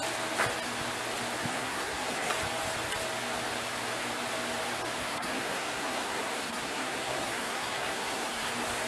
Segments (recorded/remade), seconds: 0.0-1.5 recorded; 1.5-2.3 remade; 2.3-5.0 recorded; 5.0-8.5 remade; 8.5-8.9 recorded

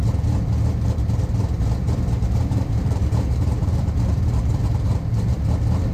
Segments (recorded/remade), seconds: 0.0-1.8 recorded; 1.8-5.3 remade; 5.3-5.9 recorded

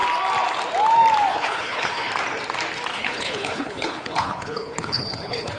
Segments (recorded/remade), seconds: 0.0-1.3 recorded; 1.3-2.1 remade; 2.1-2.9 recorded; 2.9-5.6 remade

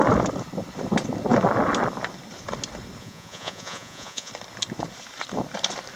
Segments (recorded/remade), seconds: 0.0-3.0 recorded; 3.0-4.3 remade; 4.3-6.0 recorded

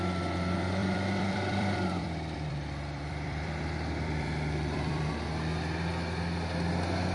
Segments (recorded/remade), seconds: 0.0-0.8 recorded; 0.8-5.1 remade; 5.1-7.1 recorded

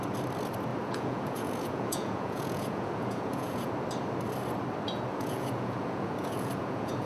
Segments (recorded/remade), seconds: 0.0-0.7 recorded; 0.7-3.7 remade; 3.7-5.1 recorded; 5.1-7.1 remade